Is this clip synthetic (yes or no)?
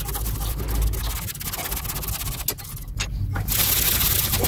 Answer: no